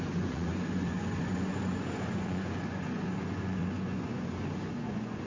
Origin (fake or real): fake